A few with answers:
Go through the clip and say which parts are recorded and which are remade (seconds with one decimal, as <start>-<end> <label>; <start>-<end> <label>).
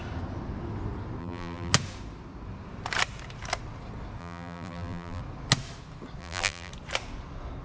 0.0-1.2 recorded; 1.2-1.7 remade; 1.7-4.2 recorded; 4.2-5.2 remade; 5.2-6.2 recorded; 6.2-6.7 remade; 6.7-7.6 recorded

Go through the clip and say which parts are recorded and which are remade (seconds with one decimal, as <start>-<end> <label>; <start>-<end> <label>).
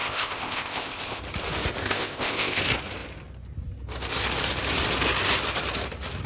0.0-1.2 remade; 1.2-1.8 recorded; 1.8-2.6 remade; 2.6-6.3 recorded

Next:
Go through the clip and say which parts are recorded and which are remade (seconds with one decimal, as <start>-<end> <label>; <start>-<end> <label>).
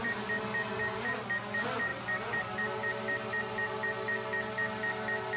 0.0-5.4 recorded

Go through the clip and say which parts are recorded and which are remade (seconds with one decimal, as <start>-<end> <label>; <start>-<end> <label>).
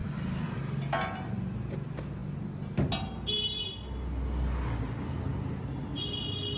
0.0-6.6 recorded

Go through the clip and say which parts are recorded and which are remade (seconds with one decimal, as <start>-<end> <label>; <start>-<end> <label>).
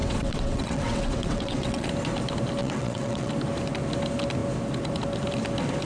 0.0-1.9 remade; 1.9-2.6 recorded; 2.6-3.3 remade; 3.3-5.9 recorded